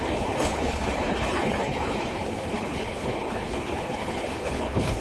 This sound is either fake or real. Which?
fake